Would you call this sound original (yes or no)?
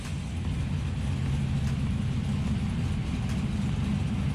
yes